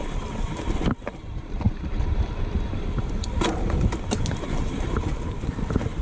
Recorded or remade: recorded